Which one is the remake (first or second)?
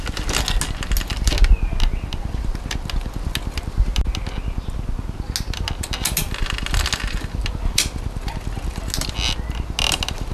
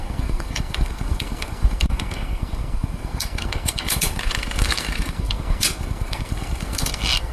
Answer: second